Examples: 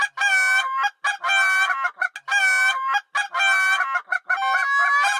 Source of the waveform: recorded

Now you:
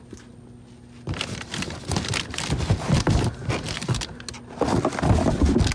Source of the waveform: recorded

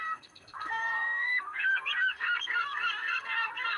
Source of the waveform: remade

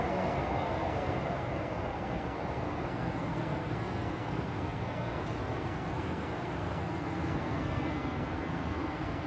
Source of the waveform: remade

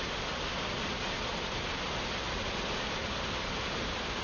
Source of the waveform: recorded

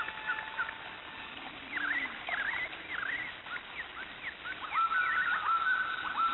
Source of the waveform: recorded